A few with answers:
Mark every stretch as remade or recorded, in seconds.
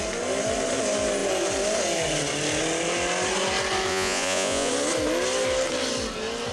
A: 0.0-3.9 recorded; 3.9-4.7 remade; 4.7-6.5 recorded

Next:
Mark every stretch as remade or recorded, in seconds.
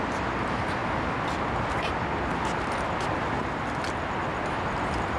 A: 0.0-5.2 recorded